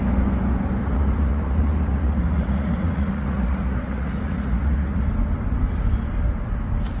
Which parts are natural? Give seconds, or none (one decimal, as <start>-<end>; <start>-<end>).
0.0-0.8; 5.0-7.0